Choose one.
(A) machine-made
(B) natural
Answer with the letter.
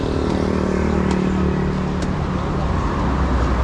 B